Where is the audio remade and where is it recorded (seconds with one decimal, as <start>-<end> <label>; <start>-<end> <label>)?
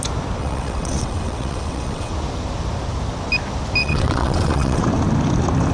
0.0-0.4 recorded; 0.4-2.1 remade; 2.1-3.8 recorded; 3.8-4.8 remade; 4.8-5.7 recorded